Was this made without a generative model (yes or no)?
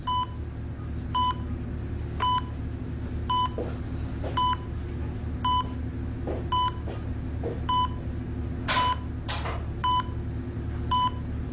yes